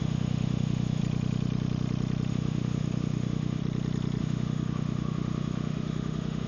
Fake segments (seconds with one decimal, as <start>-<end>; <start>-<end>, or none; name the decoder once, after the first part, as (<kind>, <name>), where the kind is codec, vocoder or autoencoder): 0.0-1.0 (autoencoder, DAC-VAE); 2.3-3.6; 4.2-6.5